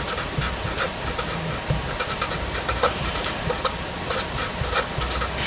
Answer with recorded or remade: recorded